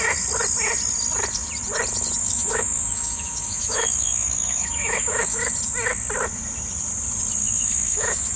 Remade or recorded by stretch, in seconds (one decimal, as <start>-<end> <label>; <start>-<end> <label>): 0.0-2.2 recorded; 2.2-5.5 remade; 5.5-7.4 recorded; 7.4-8.4 remade